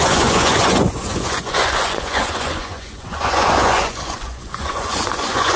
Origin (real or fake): fake